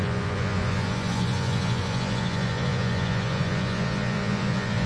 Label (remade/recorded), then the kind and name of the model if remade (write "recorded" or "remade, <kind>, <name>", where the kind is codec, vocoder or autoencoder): remade, vocoder, Vocos